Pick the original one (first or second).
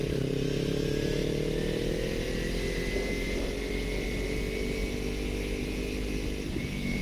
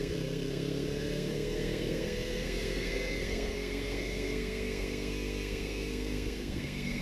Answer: first